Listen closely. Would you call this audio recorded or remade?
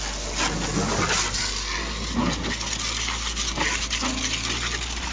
recorded